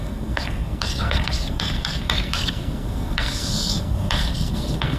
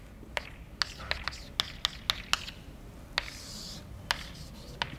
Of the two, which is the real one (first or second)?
second